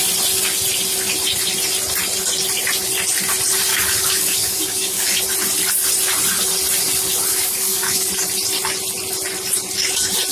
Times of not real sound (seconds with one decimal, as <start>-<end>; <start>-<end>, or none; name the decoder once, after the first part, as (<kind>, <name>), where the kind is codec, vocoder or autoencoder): 3.7-5.2 (codec, DAC); 7.3-8.1